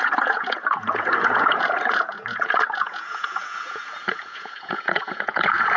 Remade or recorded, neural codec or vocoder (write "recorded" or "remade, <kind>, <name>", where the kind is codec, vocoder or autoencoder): remade, vocoder, Vocos